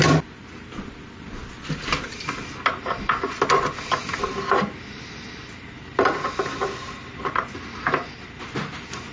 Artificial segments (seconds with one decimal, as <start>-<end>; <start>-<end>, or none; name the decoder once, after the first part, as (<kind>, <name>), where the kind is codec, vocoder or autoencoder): none